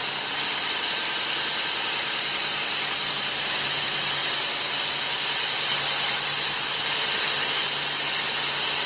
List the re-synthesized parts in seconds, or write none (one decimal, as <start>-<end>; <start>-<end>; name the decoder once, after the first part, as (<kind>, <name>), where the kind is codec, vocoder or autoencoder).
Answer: none